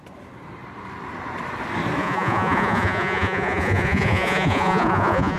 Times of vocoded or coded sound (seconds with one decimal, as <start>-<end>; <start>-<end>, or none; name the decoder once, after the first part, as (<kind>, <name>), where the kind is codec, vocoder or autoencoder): 2.0-5.4 (vocoder, Vocos)